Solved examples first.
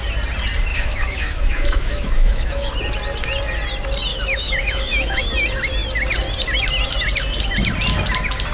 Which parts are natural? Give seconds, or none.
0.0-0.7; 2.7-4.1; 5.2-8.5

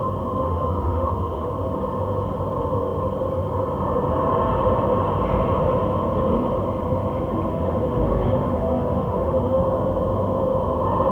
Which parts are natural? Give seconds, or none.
0.0-0.4; 1.5-7.5; 9.6-11.1

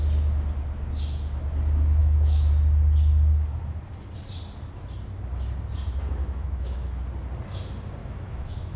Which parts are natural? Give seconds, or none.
0.0-2.0; 2.5-6.2; 7.0-8.0